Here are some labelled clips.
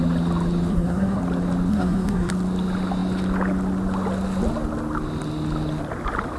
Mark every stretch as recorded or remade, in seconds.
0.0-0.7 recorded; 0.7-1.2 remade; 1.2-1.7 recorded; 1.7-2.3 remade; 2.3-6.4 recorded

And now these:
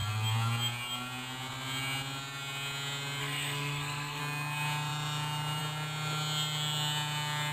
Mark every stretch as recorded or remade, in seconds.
0.0-3.2 recorded; 3.2-4.2 remade; 4.2-7.5 recorded

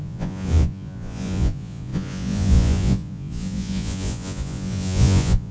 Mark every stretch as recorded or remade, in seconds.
0.0-5.5 remade